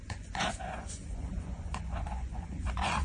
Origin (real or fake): fake